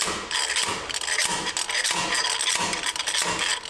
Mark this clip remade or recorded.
recorded